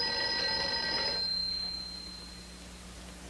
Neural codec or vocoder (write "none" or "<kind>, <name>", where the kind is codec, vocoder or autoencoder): none